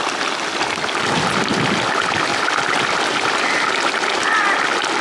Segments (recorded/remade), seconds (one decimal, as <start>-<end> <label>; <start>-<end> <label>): 0.0-5.0 recorded